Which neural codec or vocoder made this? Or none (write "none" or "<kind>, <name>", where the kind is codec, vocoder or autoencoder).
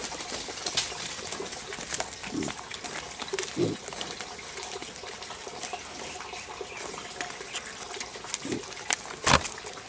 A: none